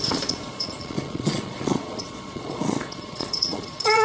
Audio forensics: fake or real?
fake